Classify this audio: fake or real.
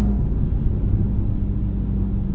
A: real